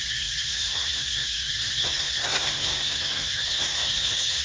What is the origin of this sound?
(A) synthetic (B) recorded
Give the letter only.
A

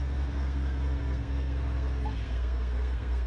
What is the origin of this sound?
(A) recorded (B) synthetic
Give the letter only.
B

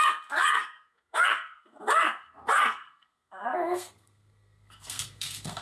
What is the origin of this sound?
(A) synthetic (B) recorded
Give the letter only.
A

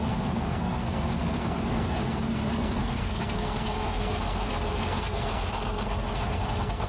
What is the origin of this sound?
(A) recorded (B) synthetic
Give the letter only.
B